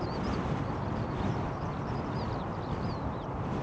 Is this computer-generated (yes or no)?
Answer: no